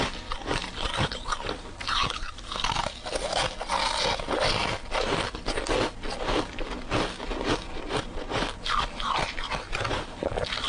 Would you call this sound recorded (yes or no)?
yes